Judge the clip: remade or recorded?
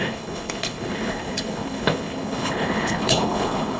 remade